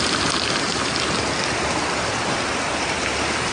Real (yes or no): yes